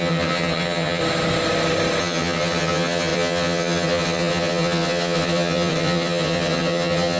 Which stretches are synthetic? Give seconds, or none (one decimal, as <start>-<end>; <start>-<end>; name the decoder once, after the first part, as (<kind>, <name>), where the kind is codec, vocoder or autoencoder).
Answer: 0.0-1.0 (vocoder, HiFi-GAN); 2.0-7.2

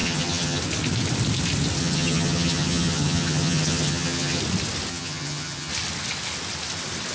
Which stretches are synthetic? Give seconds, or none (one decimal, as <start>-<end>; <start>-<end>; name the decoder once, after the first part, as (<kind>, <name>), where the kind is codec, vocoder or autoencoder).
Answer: 0.0-0.6 (vocoder, HiFi-GAN); 1.8-4.4; 4.9-5.7

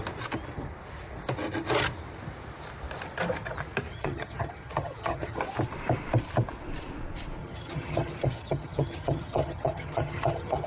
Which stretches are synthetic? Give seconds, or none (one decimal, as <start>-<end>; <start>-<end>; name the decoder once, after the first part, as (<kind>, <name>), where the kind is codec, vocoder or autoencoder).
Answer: 3.9-5.4 (vocoder, HiFi-GAN); 7.4-10.7

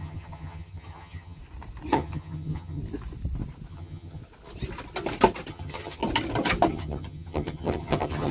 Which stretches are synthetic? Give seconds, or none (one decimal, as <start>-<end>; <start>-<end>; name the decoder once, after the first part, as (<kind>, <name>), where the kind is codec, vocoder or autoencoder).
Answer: 0.0-1.4 (vocoder, HiFi-GAN); 1.9-2.8; 3.7-4.2; 5.5-6.0; 6.7-8.3